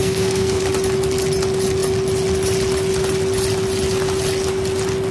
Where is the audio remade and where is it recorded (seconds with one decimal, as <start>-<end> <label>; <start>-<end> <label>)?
0.0-0.6 remade; 0.6-5.1 recorded